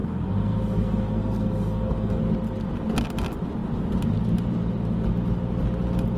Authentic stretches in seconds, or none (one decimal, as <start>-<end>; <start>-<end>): 2.2-6.2